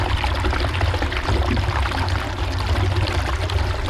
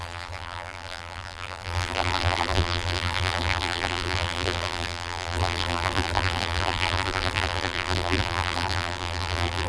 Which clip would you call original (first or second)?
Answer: first